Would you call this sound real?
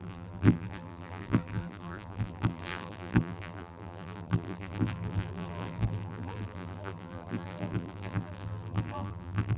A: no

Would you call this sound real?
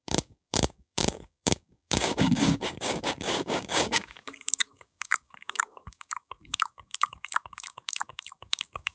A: no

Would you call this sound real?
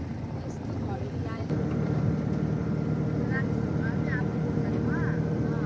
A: no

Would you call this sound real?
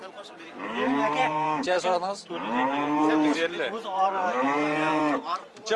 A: no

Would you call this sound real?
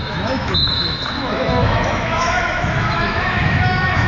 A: no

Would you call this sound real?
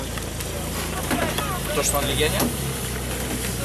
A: yes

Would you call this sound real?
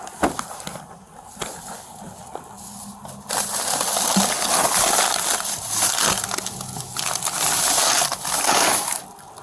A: yes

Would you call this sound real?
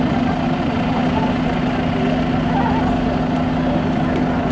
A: yes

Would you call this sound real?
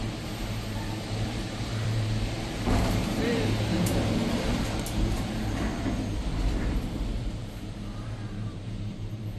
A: no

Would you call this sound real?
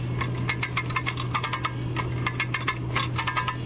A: yes